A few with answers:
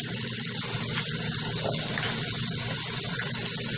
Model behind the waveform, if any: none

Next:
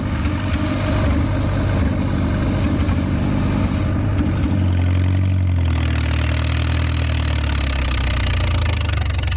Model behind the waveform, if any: none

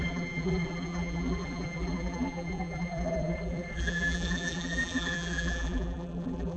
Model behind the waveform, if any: vocoder, BigVGAN v2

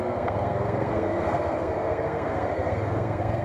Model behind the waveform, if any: codec, SNAC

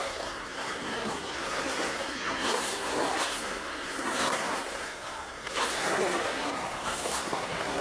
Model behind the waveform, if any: codec, SNAC